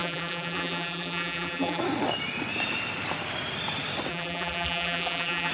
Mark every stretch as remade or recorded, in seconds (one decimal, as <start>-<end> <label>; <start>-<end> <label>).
0.0-1.8 remade; 1.8-4.1 recorded; 4.1-5.5 remade